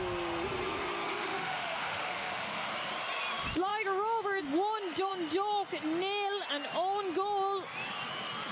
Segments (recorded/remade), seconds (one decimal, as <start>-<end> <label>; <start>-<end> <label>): 0.0-1.1 recorded; 1.1-2.7 remade; 2.7-8.5 recorded